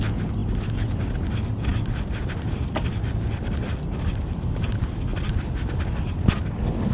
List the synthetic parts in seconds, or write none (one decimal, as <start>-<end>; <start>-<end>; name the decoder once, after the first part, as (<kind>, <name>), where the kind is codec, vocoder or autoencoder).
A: 1.7-3.0 (vocoder, BigVGAN v2); 5.1-6.5